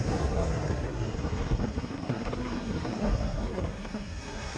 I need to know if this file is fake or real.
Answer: fake